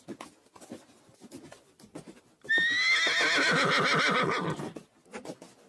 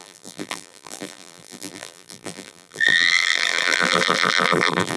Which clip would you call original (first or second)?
first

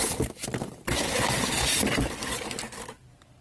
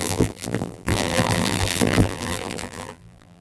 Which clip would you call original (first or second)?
first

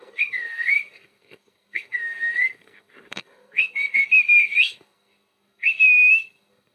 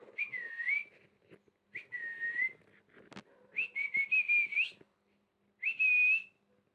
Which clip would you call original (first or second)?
second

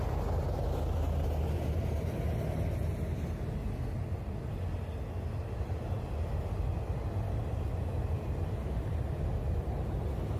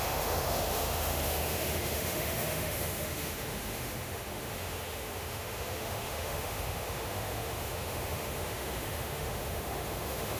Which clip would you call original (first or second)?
first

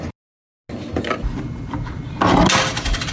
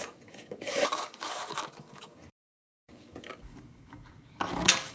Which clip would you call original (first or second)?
first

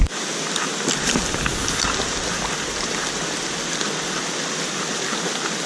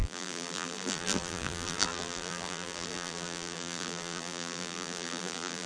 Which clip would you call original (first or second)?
first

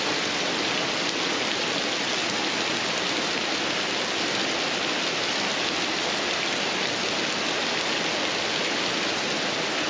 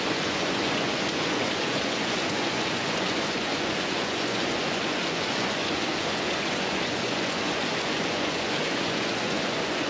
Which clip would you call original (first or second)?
first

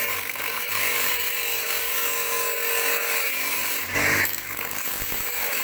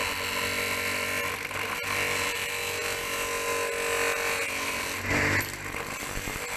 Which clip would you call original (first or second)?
second